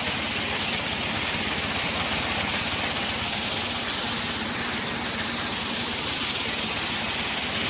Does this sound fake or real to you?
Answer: real